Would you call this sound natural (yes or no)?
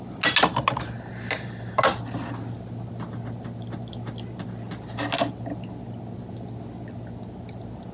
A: yes